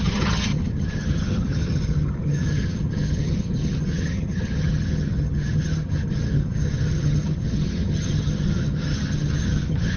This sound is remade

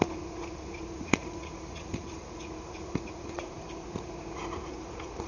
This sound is remade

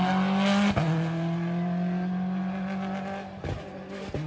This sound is recorded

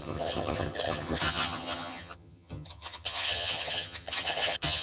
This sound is remade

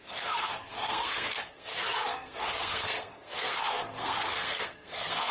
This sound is remade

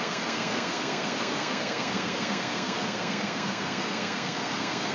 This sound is remade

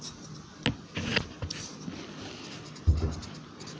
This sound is recorded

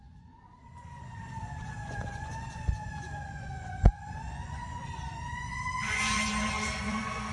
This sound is remade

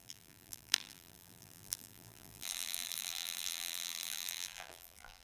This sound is remade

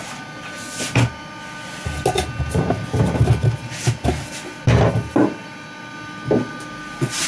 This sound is recorded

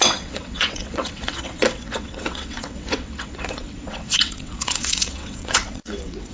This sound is remade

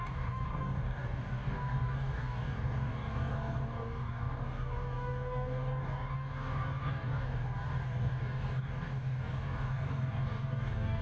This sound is remade